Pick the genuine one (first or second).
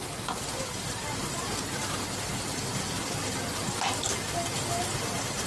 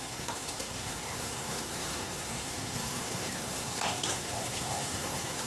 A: first